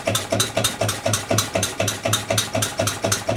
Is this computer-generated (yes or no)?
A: yes